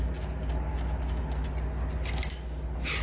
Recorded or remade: recorded